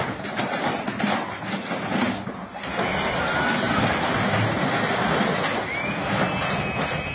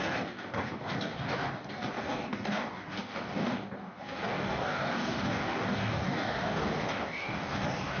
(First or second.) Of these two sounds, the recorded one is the first